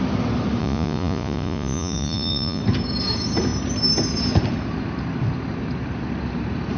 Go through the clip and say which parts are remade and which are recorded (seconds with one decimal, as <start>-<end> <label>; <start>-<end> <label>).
0.0-0.6 recorded; 0.6-2.6 remade; 2.6-6.8 recorded